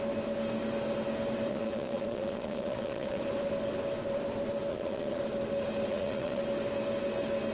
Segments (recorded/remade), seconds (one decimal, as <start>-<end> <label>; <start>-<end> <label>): 0.0-1.5 recorded; 1.5-3.2 remade; 3.2-4.7 recorded; 4.7-5.2 remade; 5.2-5.9 recorded; 5.9-6.4 remade; 6.4-7.5 recorded